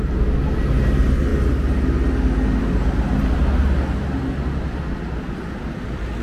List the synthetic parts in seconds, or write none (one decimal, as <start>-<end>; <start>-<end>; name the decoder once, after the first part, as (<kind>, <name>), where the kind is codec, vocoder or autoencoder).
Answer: none